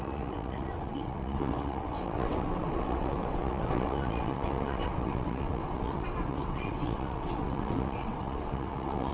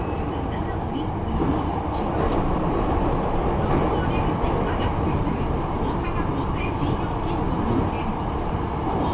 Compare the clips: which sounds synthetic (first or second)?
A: first